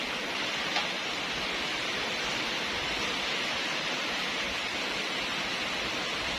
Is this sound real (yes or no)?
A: yes